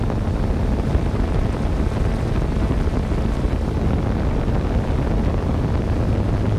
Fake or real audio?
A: real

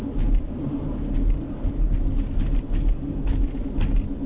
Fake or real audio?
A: real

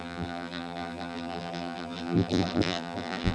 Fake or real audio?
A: fake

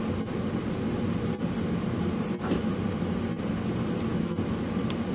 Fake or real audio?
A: real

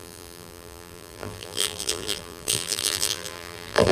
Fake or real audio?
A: fake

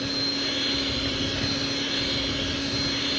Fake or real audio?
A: real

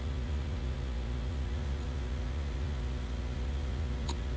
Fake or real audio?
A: fake